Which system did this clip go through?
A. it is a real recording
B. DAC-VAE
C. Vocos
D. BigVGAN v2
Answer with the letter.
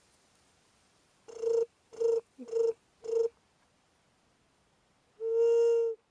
A